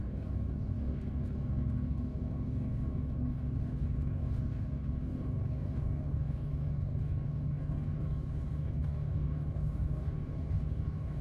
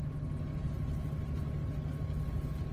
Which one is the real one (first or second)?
second